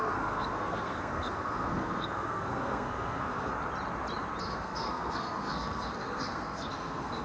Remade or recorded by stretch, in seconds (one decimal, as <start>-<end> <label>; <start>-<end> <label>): 0.0-3.5 remade; 3.5-4.4 recorded; 4.4-7.2 remade